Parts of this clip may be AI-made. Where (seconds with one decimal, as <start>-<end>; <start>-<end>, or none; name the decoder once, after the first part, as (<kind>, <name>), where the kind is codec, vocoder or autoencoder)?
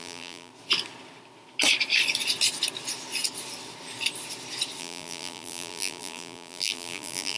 0.0-0.5 (vocoder, BigVGAN v2); 4.8-7.4